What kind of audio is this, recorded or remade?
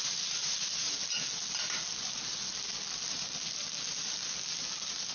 recorded